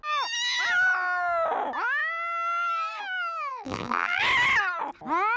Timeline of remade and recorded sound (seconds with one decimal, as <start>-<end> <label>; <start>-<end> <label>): 0.0-3.5 recorded; 3.5-4.2 remade; 4.2-5.4 recorded